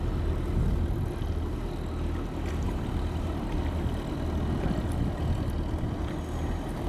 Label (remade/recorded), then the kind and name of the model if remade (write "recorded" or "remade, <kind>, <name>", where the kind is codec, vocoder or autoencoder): recorded